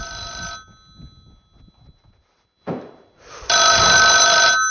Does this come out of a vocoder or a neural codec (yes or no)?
no